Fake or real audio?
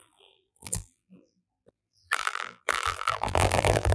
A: fake